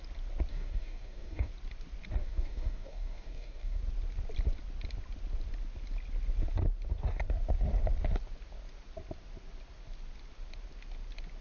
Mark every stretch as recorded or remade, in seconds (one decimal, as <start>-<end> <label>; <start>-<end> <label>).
0.0-0.5 recorded; 0.5-1.5 remade; 1.5-2.2 recorded; 2.2-3.8 remade; 3.8-11.4 recorded